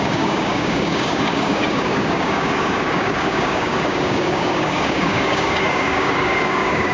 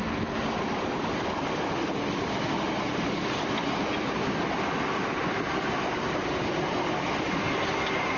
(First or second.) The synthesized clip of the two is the first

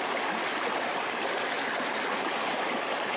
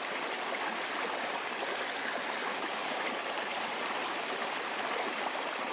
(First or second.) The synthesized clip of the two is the second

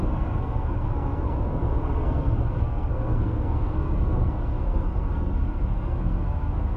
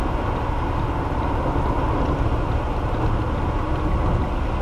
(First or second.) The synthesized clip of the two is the first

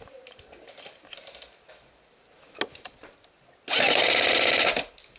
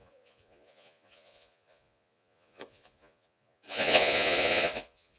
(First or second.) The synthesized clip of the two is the second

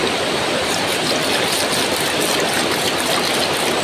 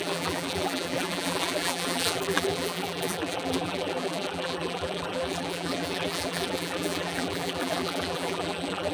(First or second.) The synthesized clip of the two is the second